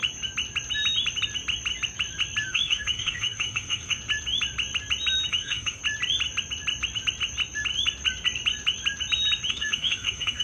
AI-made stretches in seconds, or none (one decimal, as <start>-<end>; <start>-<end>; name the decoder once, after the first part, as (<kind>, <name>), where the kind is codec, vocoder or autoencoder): 2.5-4.0 (autoencoder, DAC-VAE); 5.3-5.8; 9.5-10.4